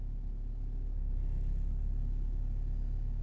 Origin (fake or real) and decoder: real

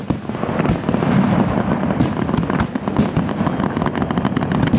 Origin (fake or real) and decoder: real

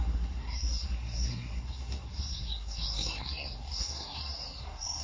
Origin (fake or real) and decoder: fake, codec, SNAC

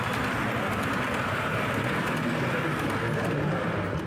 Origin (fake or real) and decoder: real